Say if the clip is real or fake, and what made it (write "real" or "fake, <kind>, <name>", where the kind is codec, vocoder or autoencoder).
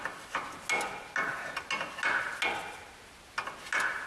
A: real